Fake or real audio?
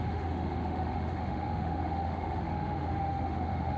fake